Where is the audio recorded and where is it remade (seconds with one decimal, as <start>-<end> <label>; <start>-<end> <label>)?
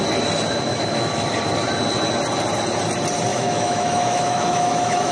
0.0-0.7 recorded; 0.7-1.3 remade; 1.3-3.3 recorded; 3.3-5.1 remade